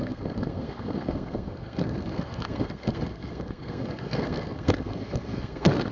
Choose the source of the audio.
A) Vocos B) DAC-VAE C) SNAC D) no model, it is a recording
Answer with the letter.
C